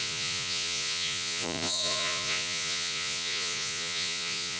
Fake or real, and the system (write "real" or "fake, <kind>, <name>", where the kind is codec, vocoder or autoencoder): fake, vocoder, Vocos